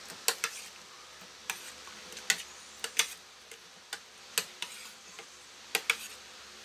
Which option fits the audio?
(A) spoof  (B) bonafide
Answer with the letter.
B